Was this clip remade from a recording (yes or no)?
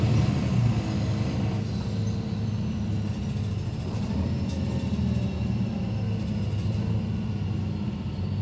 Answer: no